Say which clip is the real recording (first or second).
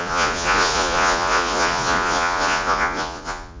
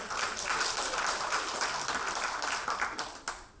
second